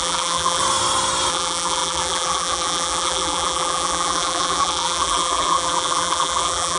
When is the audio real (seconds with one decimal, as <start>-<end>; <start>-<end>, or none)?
0.6-1.3